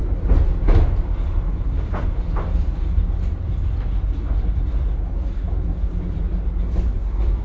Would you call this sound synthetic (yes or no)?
no